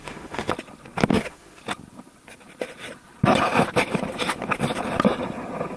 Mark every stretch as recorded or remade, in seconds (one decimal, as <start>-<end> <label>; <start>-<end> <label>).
0.0-0.5 remade; 0.5-1.1 recorded; 1.1-1.6 remade; 1.6-5.8 recorded